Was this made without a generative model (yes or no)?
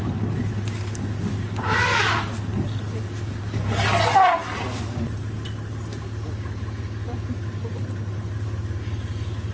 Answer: yes